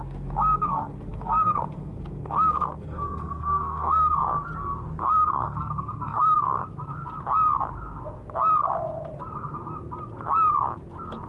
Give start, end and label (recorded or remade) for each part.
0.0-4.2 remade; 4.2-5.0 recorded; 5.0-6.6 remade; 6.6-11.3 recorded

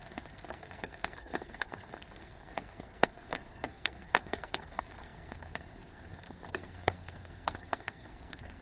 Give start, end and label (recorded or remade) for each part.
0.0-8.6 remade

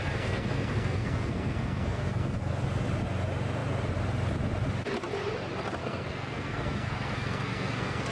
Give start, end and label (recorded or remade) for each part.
0.0-2.5 remade; 2.5-5.8 recorded; 5.8-8.1 remade